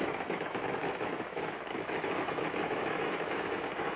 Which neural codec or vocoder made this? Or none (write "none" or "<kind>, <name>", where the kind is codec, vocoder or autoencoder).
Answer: autoencoder, DAC-VAE